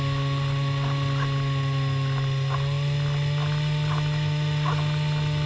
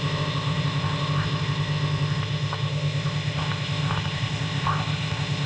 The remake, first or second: second